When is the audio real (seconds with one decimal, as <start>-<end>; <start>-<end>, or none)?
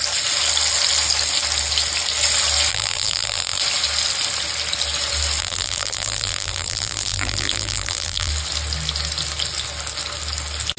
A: 0.0-2.7; 3.6-5.4; 8.3-10.8